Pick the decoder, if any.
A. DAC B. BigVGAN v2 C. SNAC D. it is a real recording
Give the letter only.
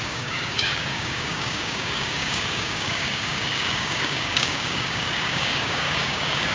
A